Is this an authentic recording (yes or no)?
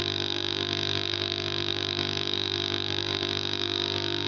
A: no